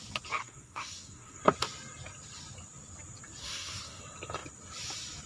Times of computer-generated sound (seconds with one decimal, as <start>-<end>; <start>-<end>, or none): 0.4-1.4; 3.4-4.0